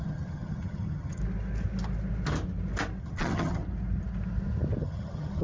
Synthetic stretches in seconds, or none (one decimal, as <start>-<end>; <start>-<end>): 0.0-1.2; 3.0-3.6; 4.8-5.4